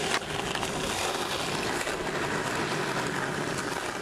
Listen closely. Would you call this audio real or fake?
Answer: real